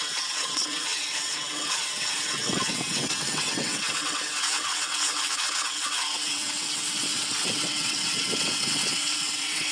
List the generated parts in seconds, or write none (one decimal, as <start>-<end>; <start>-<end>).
0.0-9.7